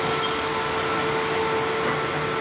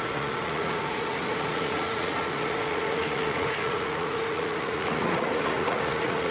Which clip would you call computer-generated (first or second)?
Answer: second